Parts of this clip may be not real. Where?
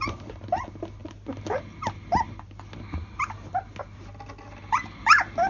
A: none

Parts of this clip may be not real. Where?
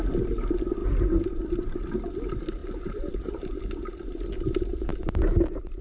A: 2.6-3.6 (vocoder, BigVGAN v2); 4.9-5.8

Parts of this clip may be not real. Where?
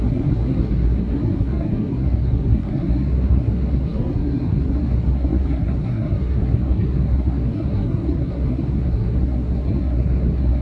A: 0.0-10.6 (codec, SNAC)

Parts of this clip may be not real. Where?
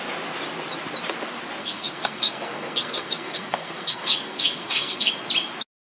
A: 1.6-5.1 (codec, SNAC)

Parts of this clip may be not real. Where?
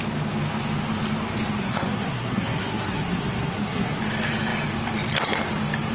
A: 1.6-4.0 (codec, SNAC)